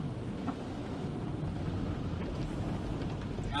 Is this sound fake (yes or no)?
no